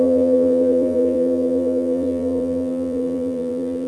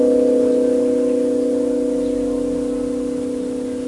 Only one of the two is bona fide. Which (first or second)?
second